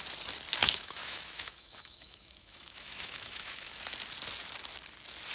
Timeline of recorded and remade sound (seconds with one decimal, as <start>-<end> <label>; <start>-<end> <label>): 0.0-0.6 recorded; 0.6-3.8 remade; 3.8-5.3 recorded

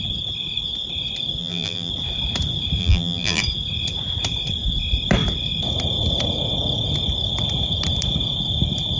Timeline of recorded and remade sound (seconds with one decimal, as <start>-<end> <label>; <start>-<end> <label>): 0.0-1.4 recorded; 1.4-1.9 remade; 1.9-2.8 recorded; 2.8-3.4 remade; 3.4-9.0 recorded

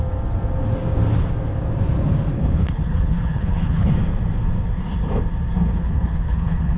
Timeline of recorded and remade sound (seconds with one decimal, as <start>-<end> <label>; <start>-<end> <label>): 0.0-2.3 recorded; 2.3-3.9 remade; 3.9-5.7 recorded; 5.7-6.8 remade

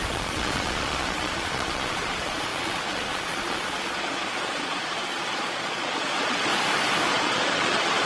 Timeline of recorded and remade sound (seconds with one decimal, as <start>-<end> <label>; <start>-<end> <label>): 0.0-6.5 remade; 6.5-7.1 recorded; 7.1-8.1 remade

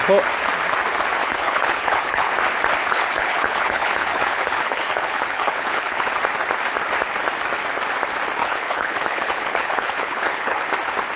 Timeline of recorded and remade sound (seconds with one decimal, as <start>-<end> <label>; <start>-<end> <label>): 0.0-1.2 recorded; 1.2-2.3 remade; 2.3-2.8 recorded; 2.8-6.1 remade; 6.1-8.4 recorded; 8.4-10.6 remade; 10.6-11.2 recorded

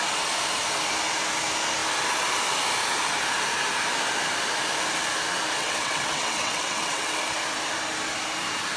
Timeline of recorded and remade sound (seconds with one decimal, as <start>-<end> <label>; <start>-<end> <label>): 0.0-5.6 recorded; 5.6-7.2 remade; 7.2-8.8 recorded

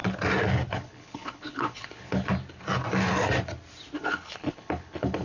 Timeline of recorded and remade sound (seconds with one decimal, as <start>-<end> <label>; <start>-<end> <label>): 0.0-0.7 recorded; 0.7-2.3 remade; 2.3-4.0 recorded; 4.0-5.2 remade